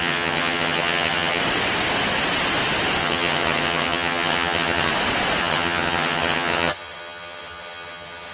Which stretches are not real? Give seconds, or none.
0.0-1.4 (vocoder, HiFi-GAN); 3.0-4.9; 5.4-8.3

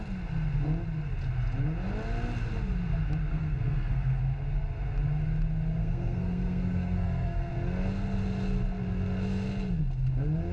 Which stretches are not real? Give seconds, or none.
3.3-4.2 (codec, SNAC); 5.8-7.5

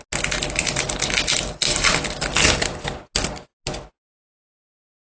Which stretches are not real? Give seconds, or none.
none